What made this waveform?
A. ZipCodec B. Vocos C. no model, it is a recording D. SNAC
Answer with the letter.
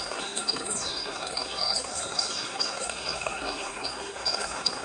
D